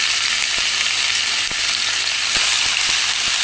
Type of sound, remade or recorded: recorded